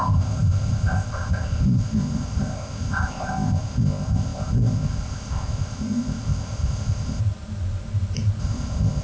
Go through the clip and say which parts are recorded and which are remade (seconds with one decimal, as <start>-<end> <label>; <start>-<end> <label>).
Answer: 0.0-7.2 remade; 7.2-8.4 recorded; 8.4-9.0 remade